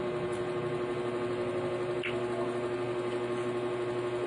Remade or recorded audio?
recorded